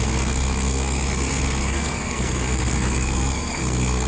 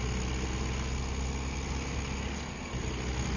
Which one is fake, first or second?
first